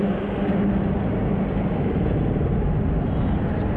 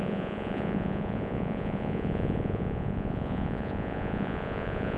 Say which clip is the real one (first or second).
first